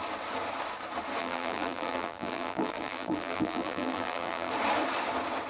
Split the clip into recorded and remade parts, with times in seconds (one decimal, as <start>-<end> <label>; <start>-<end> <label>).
0.0-1.2 recorded; 1.2-4.5 remade; 4.5-5.5 recorded